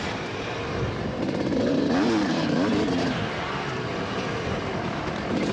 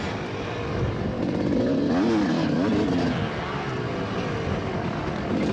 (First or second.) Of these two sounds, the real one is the second